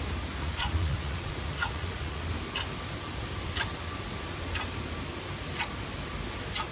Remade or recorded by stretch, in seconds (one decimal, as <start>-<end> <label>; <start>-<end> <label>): 0.0-0.4 recorded; 0.4-2.2 remade; 2.2-6.7 recorded